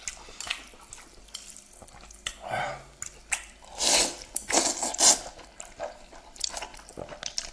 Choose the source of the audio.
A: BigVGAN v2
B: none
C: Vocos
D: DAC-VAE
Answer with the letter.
B